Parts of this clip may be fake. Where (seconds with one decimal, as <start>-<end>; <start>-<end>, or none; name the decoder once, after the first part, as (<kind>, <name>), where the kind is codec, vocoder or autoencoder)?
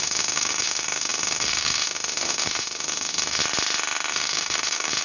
0.0-3.4 (autoencoder, DAC-VAE); 4.1-5.0